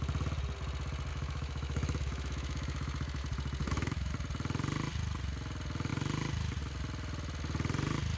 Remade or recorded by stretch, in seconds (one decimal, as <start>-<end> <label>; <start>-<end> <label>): 0.0-1.1 recorded; 1.1-3.2 remade; 3.2-3.6 recorded; 3.6-4.1 remade; 4.1-8.2 recorded